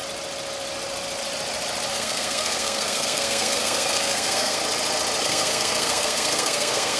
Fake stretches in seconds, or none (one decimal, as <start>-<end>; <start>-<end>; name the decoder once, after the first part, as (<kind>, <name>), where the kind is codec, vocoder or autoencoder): 1.9-4.6 (codec, SNAC); 5.2-7.0